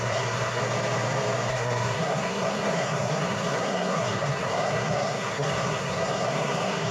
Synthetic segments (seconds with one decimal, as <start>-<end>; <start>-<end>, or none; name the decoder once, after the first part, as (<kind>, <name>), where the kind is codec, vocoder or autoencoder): 0.0-0.6 (codec, SNAC); 1.5-6.9